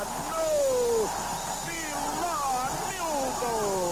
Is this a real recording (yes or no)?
yes